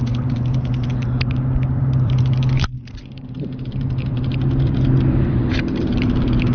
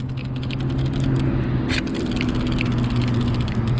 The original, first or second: second